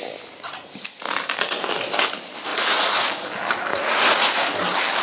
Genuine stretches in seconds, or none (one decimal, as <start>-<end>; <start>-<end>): 0.0-2.5; 3.1-3.7; 4.5-5.0